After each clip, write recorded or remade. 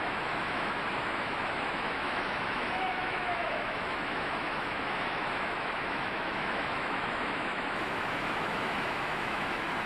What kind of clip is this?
remade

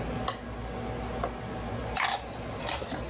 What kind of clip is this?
recorded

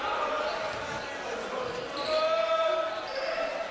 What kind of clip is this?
recorded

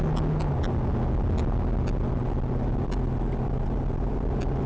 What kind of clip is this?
recorded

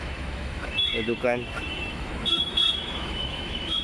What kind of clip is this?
remade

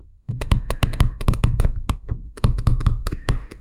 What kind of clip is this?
remade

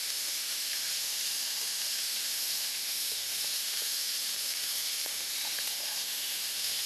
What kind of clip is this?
remade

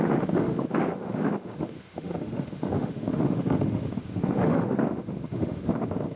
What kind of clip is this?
remade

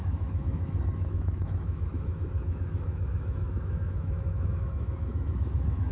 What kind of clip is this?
remade